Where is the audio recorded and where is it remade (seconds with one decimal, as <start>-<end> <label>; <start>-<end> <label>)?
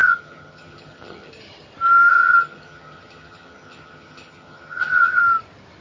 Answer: 0.0-1.3 remade; 1.3-2.1 recorded; 2.1-5.2 remade; 5.2-5.8 recorded